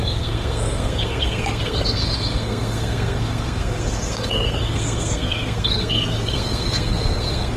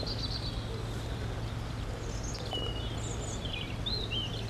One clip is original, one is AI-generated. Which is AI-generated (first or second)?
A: first